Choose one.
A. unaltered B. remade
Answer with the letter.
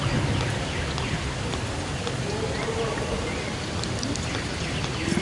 A